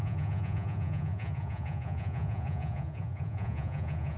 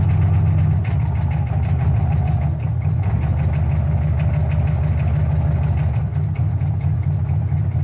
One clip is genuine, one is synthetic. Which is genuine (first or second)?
second